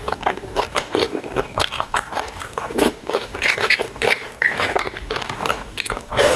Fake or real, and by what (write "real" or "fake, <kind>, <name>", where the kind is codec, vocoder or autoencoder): fake, codec, DAC